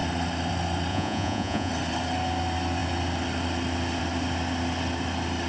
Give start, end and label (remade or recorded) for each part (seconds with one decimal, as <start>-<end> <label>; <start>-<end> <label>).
0.0-0.9 recorded; 0.9-1.7 remade; 1.7-5.5 recorded